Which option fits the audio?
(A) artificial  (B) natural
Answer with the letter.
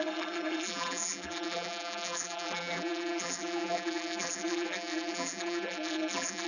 A